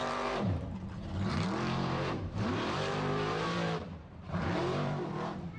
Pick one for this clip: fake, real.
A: fake